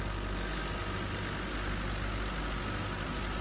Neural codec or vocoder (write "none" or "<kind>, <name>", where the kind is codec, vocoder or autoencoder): none